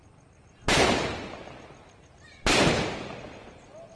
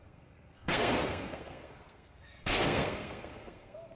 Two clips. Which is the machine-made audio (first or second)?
second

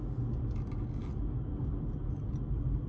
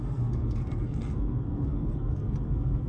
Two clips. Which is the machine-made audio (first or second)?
second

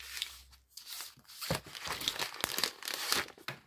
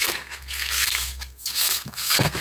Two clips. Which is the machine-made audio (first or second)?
second